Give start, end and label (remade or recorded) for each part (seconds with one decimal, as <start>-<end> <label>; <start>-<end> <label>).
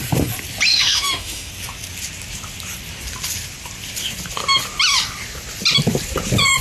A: 0.0-0.7 recorded; 0.7-1.5 remade; 1.5-6.6 recorded